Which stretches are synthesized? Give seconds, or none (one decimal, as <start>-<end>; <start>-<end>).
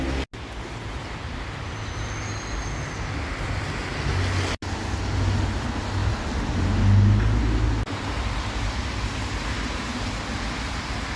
none